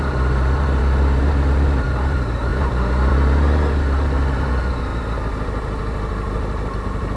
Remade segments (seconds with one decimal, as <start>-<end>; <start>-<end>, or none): 0.0-4.9; 6.8-7.2

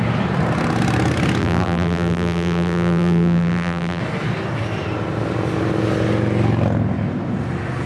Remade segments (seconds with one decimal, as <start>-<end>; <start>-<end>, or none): 1.4-4.0

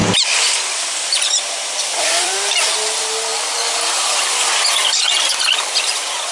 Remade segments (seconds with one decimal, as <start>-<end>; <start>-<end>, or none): 0.0-2.6; 3.3-6.3

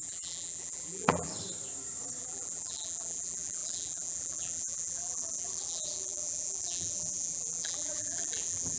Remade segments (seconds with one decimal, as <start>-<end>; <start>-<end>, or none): 0.0-1.3; 2.2-8.8

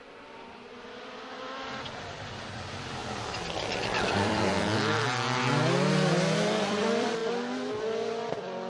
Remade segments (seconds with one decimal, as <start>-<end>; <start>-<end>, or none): 0.0-3.0; 4.1-4.5; 5.9-7.2; 8.2-8.7